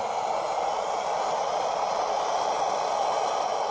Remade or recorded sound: recorded